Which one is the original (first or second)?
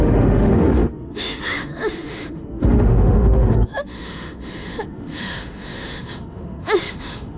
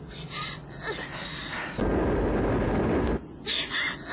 second